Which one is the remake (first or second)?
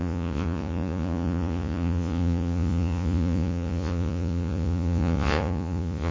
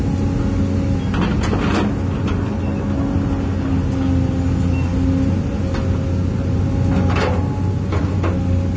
first